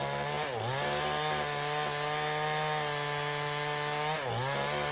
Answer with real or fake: real